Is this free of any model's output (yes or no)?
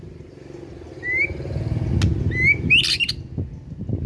yes